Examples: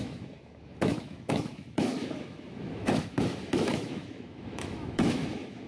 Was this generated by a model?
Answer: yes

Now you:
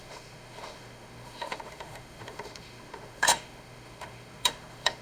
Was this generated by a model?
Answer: yes